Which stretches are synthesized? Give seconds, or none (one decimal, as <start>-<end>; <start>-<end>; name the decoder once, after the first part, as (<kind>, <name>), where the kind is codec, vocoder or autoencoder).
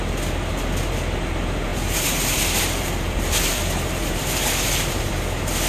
1.7-5.1 (vocoder, BigVGAN v2)